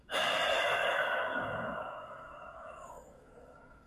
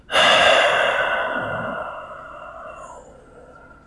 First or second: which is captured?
second